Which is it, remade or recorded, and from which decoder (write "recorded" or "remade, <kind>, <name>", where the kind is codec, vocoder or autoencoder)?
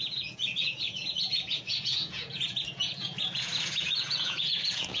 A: remade, vocoder, Vocos